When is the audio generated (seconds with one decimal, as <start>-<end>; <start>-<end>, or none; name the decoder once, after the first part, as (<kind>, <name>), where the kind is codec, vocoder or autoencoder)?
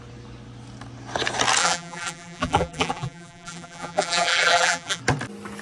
1.6-5.0 (vocoder, BigVGAN v2)